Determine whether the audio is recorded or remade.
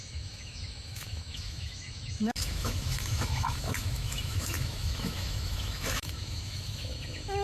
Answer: remade